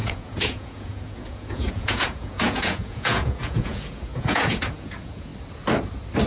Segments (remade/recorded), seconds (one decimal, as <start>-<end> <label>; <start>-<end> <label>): 0.0-5.3 remade; 5.3-6.3 recorded